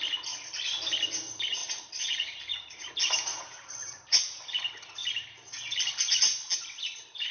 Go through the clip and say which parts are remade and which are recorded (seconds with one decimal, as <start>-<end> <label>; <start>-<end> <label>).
0.0-1.6 recorded; 1.6-2.9 remade; 2.9-3.3 recorded; 3.3-4.2 remade; 4.2-7.3 recorded